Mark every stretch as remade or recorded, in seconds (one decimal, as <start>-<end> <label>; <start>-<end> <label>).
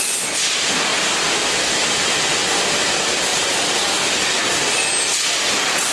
0.0-5.9 recorded